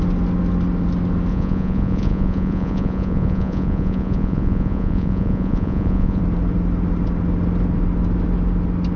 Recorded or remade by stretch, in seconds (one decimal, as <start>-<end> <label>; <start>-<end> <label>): 0.0-1.3 recorded; 1.3-6.2 remade; 6.2-9.0 recorded